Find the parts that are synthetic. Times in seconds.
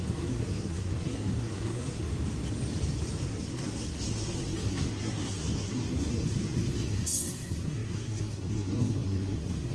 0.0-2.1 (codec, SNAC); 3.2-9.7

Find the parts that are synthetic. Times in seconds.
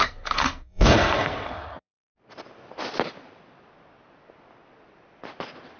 0.0-2.1 (codec, SNAC)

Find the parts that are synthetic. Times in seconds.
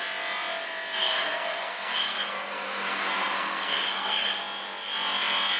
1.0-4.4 (codec, SNAC)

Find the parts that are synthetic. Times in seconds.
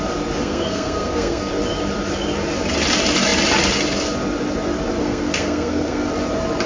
0.4-1.5 (codec, SNAC); 5.0-6.1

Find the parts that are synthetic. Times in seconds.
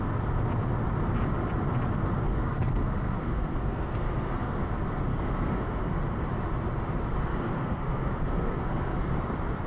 2.3-4.6 (codec, SNAC); 5.1-6.0; 7.3-9.1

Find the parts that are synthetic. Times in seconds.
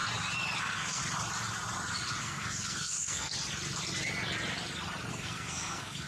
0.6-1.0 (codec, SNAC); 2.2-3.3; 5.1-6.1